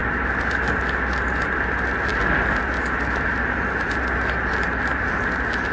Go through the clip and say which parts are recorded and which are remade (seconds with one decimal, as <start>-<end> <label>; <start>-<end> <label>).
0.0-5.7 recorded